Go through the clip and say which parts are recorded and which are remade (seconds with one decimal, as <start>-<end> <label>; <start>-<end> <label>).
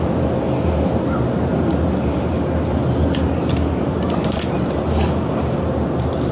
0.0-6.3 recorded